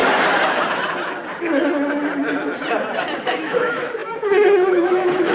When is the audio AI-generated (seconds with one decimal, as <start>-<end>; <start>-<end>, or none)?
3.2-5.3